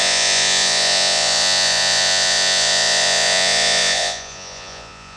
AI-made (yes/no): yes